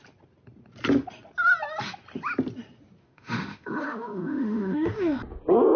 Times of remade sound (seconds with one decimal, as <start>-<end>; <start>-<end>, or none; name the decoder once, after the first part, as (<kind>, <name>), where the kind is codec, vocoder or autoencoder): 3.0-5.2 (autoencoder, DAC-VAE)